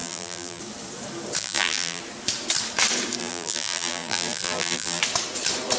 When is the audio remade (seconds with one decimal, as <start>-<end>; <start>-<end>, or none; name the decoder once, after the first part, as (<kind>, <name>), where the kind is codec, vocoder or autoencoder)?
0.0-0.6 (vocoder, BigVGAN v2); 1.4-2.0; 3.2-5.0